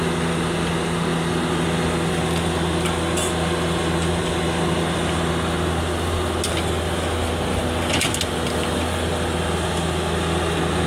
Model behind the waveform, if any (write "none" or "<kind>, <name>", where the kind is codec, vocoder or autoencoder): none